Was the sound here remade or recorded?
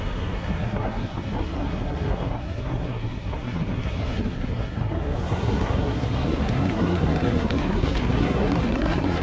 remade